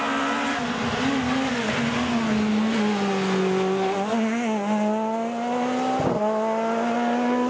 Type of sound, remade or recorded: recorded